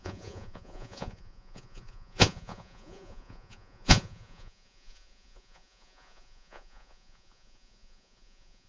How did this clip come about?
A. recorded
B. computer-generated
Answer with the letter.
B